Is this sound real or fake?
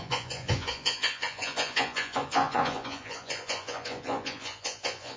fake